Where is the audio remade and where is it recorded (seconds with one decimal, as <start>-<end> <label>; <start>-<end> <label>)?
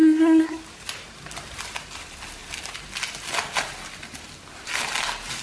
0.0-0.6 remade; 0.6-5.4 recorded